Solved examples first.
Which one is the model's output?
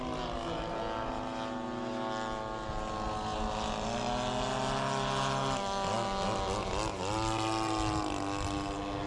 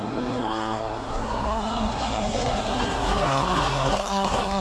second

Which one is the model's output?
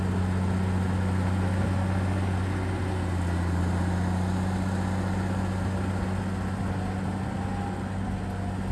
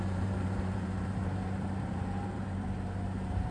second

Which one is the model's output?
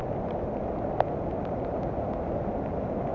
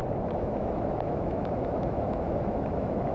second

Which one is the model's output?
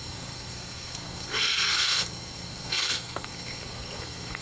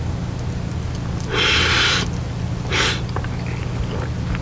first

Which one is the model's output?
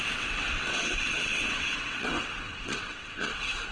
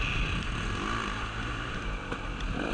first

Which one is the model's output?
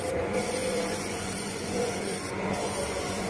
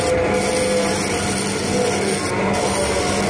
first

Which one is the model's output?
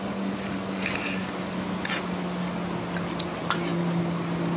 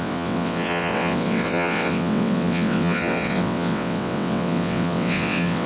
second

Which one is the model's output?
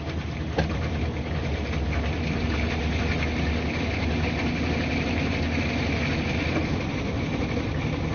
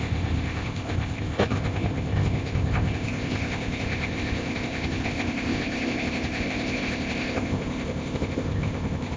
second